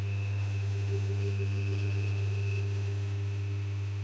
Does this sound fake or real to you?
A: fake